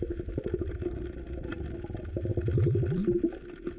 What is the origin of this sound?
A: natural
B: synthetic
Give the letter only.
A